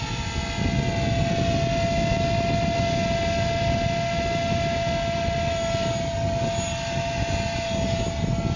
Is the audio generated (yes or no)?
no